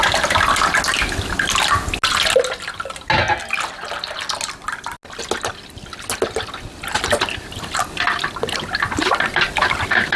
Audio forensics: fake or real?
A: real